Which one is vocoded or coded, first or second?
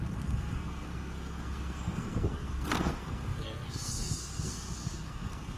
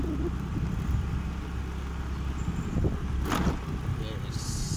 first